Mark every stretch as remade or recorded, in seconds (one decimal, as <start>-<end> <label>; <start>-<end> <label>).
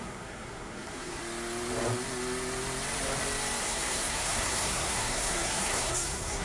0.0-1.2 remade; 1.2-3.6 recorded; 3.6-6.4 remade